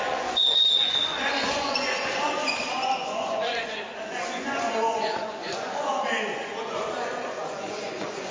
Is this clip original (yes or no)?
no